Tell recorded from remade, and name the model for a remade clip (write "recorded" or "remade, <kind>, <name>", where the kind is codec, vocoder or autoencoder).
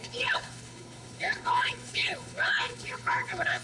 remade, codec, HILCodec